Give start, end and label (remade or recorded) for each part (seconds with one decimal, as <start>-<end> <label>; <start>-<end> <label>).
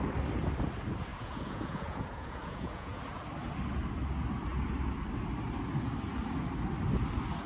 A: 0.0-1.1 recorded; 1.1-3.0 remade; 3.0-7.5 recorded